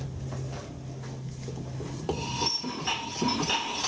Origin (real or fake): real